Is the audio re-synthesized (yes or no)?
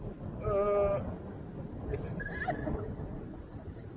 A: no